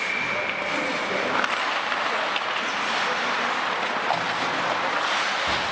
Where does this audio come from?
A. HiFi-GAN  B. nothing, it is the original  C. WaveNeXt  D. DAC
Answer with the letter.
B